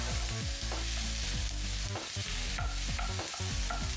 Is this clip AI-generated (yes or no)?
no